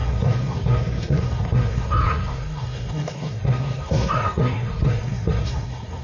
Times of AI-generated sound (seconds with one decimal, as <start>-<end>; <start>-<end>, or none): 0.0-6.0